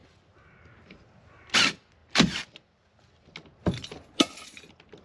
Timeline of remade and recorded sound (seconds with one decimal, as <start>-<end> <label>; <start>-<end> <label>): 0.0-5.0 recorded